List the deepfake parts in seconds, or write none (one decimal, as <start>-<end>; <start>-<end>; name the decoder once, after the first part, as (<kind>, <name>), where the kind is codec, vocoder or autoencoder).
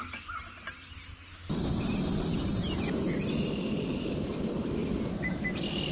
4.8-5.4 (vocoder, BigVGAN v2)